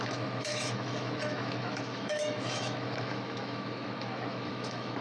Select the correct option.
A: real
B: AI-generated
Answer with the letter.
B